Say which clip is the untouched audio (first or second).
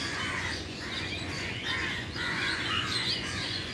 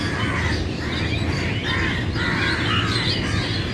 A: second